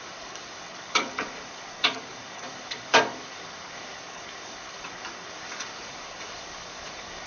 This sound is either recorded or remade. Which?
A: remade